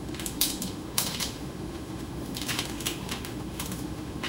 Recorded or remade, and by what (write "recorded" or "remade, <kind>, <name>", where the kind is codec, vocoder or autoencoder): remade, autoencoder, DAC-VAE